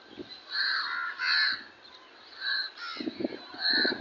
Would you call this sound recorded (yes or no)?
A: yes